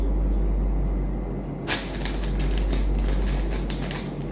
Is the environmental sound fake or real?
real